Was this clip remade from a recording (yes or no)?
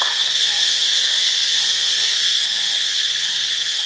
yes